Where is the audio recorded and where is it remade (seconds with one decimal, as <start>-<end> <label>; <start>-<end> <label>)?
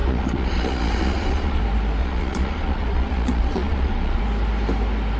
0.0-1.6 remade; 1.6-2.0 recorded; 2.0-4.2 remade; 4.2-5.2 recorded